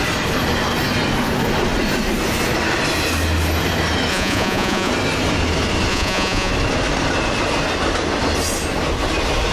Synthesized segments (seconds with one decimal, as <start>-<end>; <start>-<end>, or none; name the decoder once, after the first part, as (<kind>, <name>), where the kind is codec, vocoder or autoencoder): 4.1-4.9 (vocoder, Vocos); 5.9-6.5